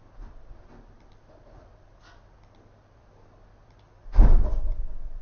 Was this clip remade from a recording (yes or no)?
yes